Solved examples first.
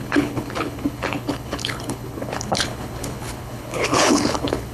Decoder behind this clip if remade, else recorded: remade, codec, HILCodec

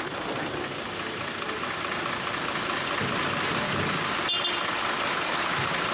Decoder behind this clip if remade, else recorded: recorded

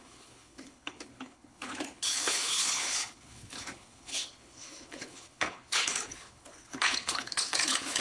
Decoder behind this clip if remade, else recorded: remade, codec, HILCodec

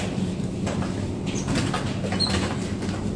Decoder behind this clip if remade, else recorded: recorded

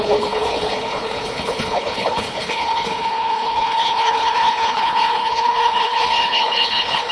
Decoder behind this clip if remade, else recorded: remade, codec, HILCodec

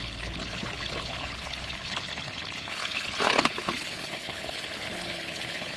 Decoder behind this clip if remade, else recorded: remade, codec, HILCodec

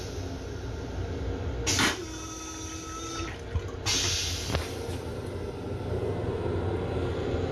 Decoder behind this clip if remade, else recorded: recorded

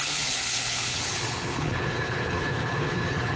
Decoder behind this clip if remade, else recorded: remade, codec, HILCodec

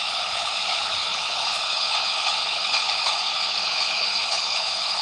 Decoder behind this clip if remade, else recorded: remade, codec, HILCodec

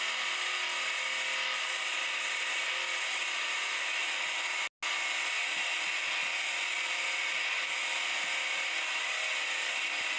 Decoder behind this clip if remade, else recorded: recorded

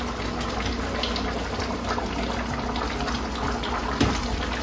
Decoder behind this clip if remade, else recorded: recorded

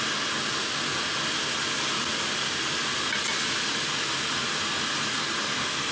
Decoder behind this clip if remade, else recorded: recorded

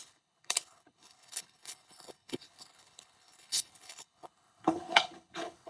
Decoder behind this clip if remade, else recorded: remade, codec, HILCodec